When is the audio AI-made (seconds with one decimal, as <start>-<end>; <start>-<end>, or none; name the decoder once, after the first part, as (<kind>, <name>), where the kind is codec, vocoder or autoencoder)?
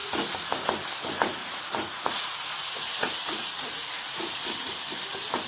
0.0-0.7 (vocoder, Vocos); 1.4-4.7